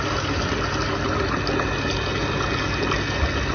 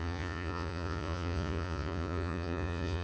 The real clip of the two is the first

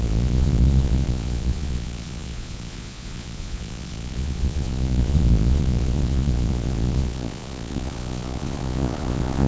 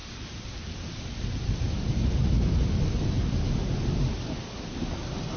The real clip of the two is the second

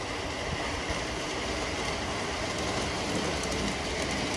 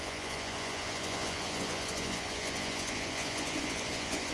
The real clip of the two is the first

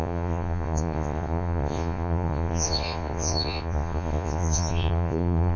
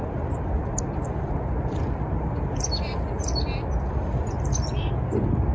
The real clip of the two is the second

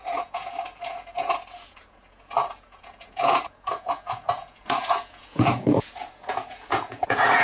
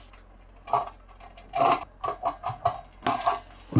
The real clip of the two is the second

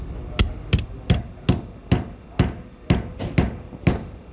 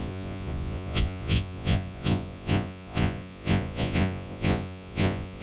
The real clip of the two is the first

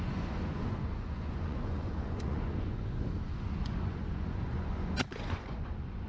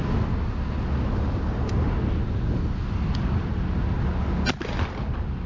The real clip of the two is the second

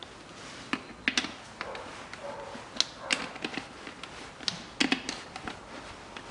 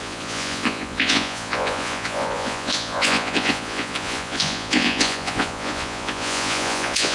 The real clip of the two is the first